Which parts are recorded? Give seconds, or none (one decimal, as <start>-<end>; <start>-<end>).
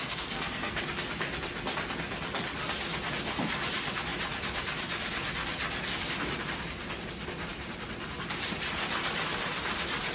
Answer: 0.8-10.1